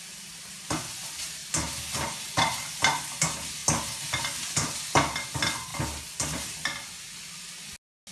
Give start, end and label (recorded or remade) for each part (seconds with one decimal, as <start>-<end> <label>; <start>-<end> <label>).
0.0-8.1 recorded